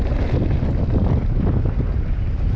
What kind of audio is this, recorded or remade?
recorded